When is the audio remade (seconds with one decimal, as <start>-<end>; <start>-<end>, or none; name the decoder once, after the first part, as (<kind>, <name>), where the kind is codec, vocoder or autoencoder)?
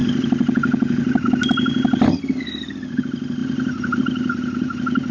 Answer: none